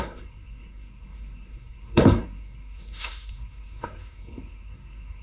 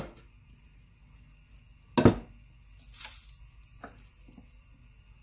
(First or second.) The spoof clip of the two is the first